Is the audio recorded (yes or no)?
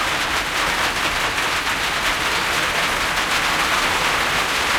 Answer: yes